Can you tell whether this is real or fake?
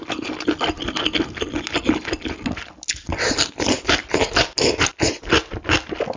real